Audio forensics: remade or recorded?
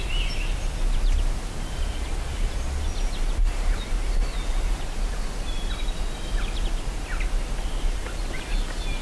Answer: recorded